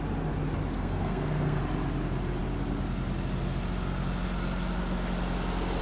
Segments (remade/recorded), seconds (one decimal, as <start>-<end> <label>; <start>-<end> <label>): 0.0-0.7 recorded; 0.7-1.6 remade; 1.6-5.8 recorded